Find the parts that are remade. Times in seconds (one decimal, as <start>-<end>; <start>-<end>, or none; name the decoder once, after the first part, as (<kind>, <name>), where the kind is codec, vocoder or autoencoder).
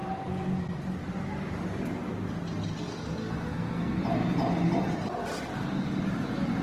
3.2-4.0 (codec, SNAC)